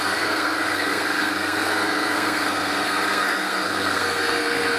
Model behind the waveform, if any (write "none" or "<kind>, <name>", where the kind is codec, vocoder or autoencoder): codec, SNAC